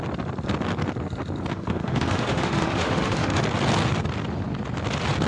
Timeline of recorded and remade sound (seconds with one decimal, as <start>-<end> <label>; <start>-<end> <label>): 0.0-1.5 recorded; 1.5-3.4 remade; 3.4-5.3 recorded